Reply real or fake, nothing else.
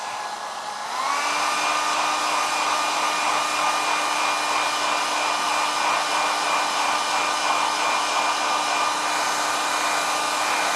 real